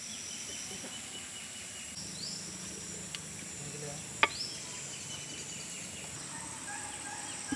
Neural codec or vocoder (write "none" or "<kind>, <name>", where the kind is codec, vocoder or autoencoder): none